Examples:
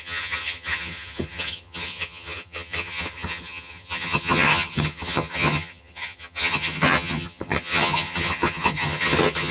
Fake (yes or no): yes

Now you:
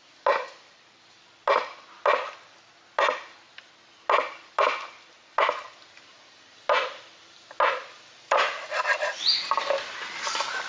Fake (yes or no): no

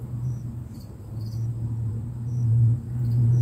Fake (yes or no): yes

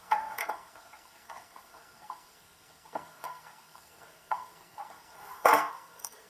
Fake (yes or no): yes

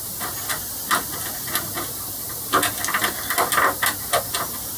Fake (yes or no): no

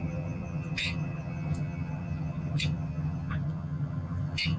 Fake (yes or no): yes